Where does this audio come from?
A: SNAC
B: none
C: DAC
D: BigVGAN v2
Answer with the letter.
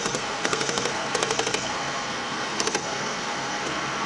A